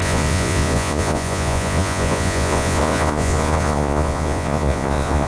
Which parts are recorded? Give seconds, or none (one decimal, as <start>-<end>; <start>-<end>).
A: none